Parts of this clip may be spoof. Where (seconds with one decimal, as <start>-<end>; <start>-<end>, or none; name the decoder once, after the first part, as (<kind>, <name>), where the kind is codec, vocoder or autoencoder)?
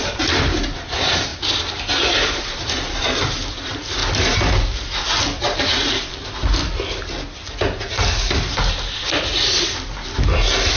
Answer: 0.0-1.3 (vocoder, BigVGAN v2); 2.4-4.0; 5.4-6.6